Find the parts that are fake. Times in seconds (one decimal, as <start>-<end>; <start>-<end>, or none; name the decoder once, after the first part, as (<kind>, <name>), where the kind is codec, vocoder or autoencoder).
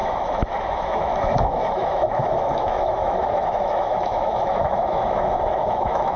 0.0-6.2 (autoencoder, DAC-VAE)